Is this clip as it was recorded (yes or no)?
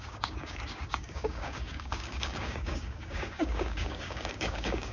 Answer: no